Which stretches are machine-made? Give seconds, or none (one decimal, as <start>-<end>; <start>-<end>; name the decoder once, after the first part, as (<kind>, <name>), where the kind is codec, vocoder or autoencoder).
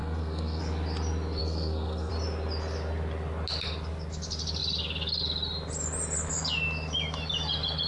0.0-0.6 (codec, SNAC); 1.4-2.1